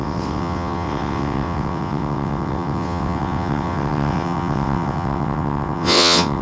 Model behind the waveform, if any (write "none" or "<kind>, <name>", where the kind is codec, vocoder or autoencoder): vocoder, WaveNeXt